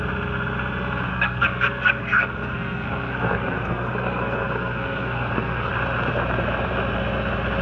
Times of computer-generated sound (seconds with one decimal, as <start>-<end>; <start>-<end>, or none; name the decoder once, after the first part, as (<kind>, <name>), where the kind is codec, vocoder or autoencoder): 1.1-5.7 (codec, SNAC)